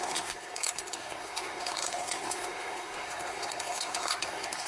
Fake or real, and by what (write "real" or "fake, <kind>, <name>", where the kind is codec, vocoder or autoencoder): fake, codec, SNAC